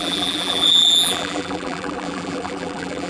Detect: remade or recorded remade